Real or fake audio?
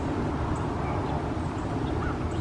real